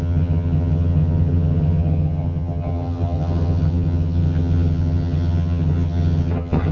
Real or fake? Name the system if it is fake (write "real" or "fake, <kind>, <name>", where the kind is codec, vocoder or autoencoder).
fake, vocoder, HiFi-GAN